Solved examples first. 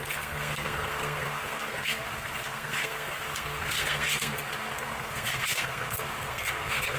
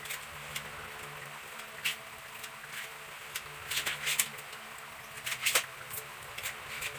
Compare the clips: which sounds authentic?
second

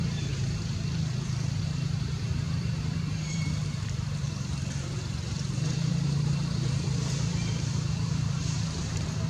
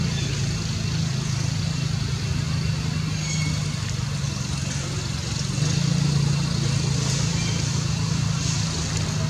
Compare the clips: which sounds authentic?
second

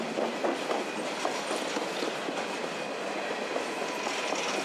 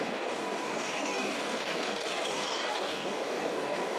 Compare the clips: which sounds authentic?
first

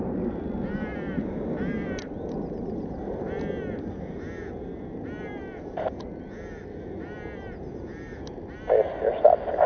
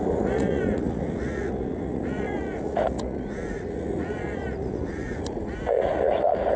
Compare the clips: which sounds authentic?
first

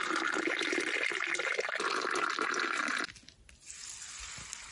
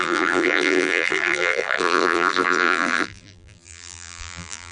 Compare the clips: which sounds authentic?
first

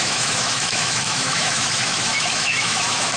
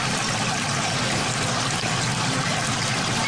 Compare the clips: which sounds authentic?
second